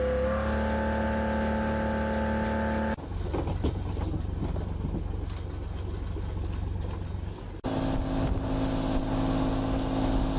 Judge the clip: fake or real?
real